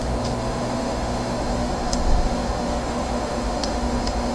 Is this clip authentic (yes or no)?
no